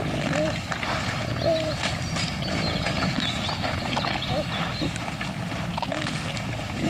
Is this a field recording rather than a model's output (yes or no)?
yes